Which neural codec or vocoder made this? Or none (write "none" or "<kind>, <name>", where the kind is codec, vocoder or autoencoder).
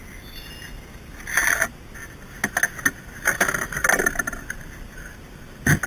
none